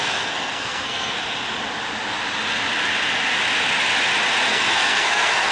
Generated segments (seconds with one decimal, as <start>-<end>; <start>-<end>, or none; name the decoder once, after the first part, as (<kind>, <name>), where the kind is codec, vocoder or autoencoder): 0.0-1.2 (codec, SNAC); 4.5-5.5